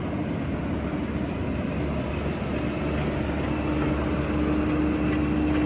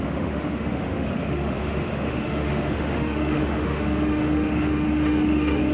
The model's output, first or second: second